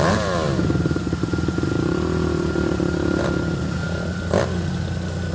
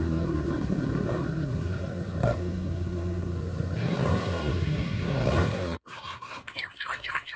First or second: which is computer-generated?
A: second